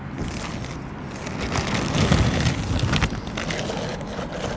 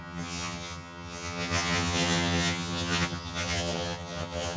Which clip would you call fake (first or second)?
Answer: second